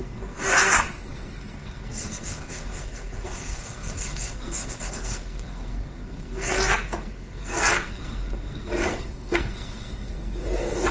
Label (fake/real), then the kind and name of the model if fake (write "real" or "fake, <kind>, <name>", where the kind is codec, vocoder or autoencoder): fake, codec, SNAC